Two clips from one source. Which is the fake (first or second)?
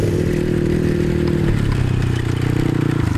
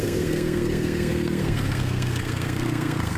second